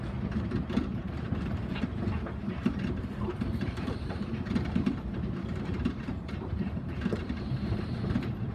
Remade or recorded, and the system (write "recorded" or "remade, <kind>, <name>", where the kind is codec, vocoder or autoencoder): remade, vocoder, BigVGAN v2